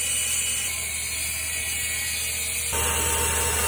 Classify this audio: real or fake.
real